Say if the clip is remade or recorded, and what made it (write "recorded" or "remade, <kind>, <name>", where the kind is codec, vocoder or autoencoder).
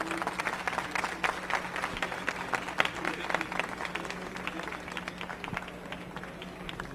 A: recorded